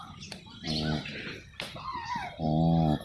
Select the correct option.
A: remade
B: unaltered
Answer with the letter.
B